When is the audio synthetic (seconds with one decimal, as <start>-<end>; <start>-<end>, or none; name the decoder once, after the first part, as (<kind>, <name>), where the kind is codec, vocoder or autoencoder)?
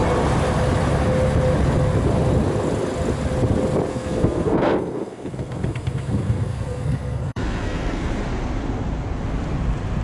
3.9-8.1 (codec, SNAC)